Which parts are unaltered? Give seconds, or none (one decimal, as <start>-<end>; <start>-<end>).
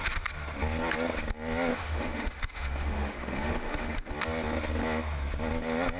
0.0-1.7; 4.1-6.0